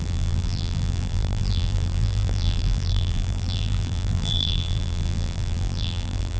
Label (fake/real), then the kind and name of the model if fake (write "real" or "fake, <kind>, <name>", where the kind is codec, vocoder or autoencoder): fake, vocoder, BigVGAN v2